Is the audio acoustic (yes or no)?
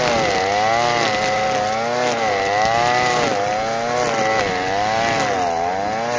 yes